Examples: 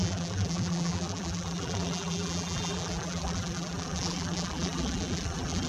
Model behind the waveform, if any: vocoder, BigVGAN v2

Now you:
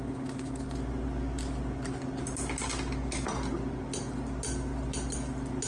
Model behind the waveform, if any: none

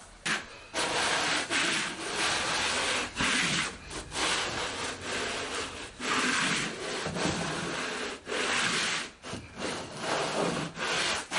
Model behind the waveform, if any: none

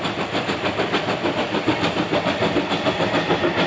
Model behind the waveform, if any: none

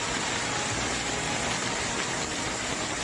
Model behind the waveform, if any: none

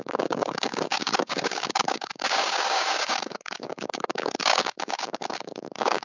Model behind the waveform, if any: codec, DAC